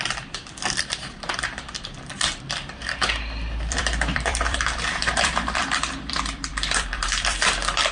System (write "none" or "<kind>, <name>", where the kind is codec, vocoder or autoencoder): vocoder, BigVGAN v2